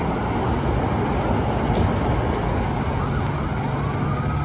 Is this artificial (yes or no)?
no